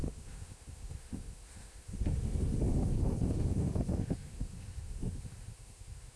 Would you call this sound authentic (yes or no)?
no